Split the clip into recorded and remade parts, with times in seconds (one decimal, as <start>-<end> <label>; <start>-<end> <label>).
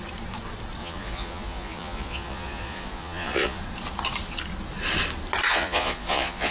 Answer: 0.0-0.8 recorded; 0.8-3.6 remade; 3.6-5.5 recorded; 5.5-6.5 remade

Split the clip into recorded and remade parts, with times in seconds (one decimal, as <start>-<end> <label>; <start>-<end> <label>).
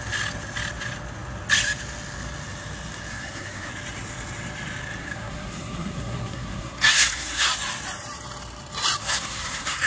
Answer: 0.0-3.1 recorded; 3.1-3.7 remade; 3.7-5.0 recorded; 5.0-7.5 remade; 7.5-9.0 recorded; 9.0-9.9 remade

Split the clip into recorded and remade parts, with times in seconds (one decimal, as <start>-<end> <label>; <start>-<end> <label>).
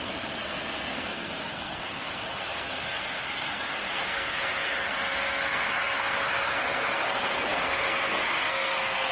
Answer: 0.0-9.1 remade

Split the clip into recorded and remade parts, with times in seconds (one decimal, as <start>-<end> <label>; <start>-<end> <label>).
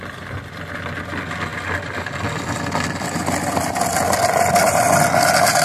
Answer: 0.0-5.6 recorded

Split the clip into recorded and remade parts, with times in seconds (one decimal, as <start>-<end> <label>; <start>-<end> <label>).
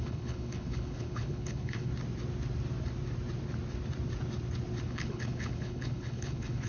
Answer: 0.0-1.9 remade; 1.9-4.9 recorded; 4.9-6.7 remade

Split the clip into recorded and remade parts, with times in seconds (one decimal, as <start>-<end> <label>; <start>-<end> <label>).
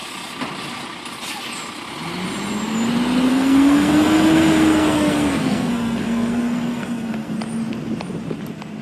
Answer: 0.0-3.3 recorded; 3.3-7.4 remade; 7.4-8.8 recorded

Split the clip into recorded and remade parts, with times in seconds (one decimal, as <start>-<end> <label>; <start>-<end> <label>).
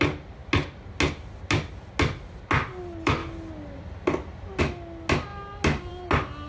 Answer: 0.0-6.5 recorded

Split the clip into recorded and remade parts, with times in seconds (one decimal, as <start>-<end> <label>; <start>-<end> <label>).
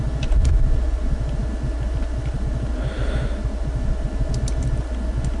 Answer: 0.0-5.4 recorded